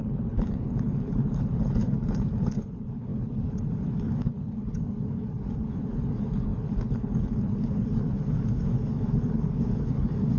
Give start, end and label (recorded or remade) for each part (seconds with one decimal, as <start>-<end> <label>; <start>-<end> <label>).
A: 0.0-10.4 remade